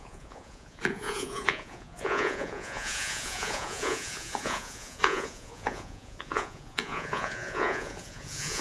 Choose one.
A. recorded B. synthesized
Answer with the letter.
B